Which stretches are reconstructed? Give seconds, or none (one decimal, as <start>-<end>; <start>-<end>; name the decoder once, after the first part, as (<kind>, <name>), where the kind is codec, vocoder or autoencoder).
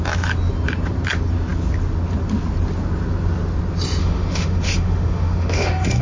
4.0-6.0 (autoencoder, DAC-VAE)